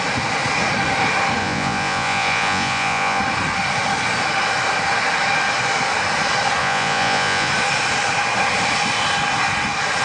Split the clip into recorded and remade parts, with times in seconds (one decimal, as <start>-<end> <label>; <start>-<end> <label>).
0.0-1.4 recorded; 1.4-3.2 remade; 3.2-6.6 recorded; 6.6-7.5 remade; 7.5-10.0 recorded